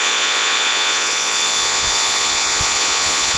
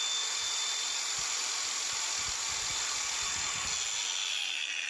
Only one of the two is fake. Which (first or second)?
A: first